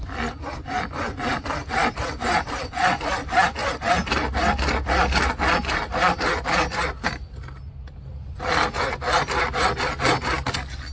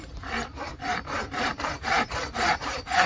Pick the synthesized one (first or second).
second